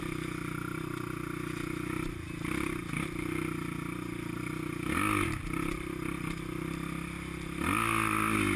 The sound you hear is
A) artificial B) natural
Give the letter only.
B